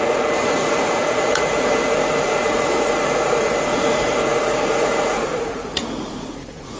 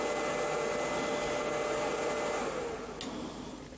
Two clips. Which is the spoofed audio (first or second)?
first